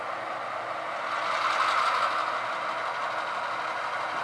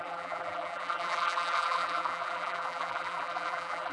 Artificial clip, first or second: second